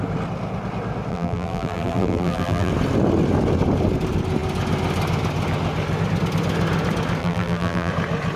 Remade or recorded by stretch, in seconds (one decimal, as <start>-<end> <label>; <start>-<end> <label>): 0.0-1.1 recorded; 1.1-2.7 remade; 2.7-7.2 recorded; 7.2-7.9 remade; 7.9-8.4 recorded